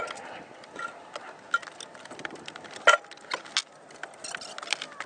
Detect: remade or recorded recorded